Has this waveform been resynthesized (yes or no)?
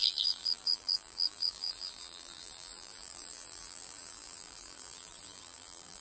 yes